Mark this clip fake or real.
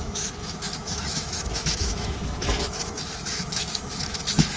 fake